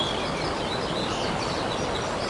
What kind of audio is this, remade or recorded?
recorded